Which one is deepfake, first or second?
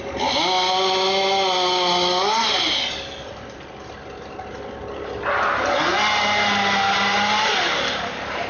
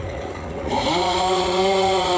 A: second